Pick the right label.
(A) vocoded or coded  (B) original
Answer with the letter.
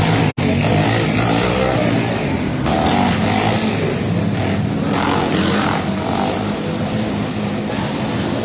B